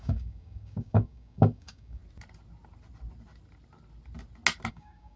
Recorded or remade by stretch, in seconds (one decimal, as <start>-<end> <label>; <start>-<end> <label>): 0.0-2.0 remade; 2.0-4.7 recorded; 4.7-5.2 remade